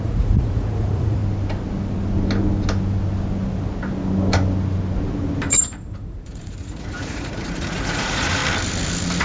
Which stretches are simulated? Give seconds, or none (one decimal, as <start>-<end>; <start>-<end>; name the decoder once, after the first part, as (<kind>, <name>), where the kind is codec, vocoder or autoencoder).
0.0-1.2 (vocoder, Vocos); 5.5-8.4

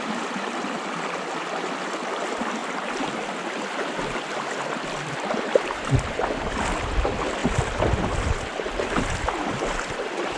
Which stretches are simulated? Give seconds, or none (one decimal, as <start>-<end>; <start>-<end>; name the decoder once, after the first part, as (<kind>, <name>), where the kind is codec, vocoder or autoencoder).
0.0-2.6 (vocoder, BigVGAN v2); 5.4-10.4

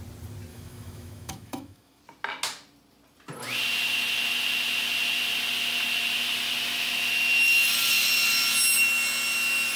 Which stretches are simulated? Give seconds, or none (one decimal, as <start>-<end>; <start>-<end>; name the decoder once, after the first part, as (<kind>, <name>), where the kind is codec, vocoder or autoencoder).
0.5-2.0 (autoencoder, DAC-VAE)